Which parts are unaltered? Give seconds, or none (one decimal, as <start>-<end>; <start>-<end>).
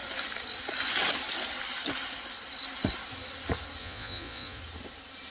0.0-3.8; 4.6-5.3